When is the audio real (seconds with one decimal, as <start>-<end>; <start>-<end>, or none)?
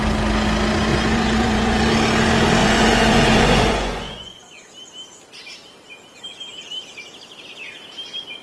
0.0-0.9; 1.8-2.6; 4.7-8.4